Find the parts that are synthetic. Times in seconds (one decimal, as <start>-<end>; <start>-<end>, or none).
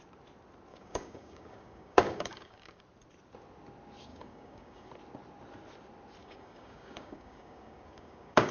0.7-2.8; 4.1-4.9; 6.2-8.5